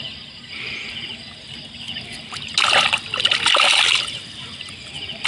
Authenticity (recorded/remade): recorded